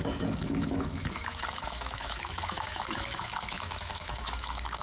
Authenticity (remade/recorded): remade